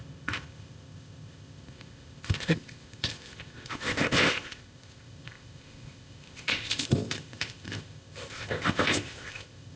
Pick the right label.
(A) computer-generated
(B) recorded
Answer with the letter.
A